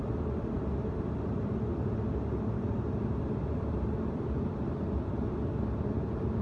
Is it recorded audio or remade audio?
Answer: recorded